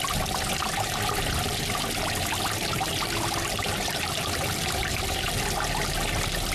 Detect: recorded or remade recorded